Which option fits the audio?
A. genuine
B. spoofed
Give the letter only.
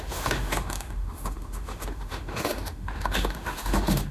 B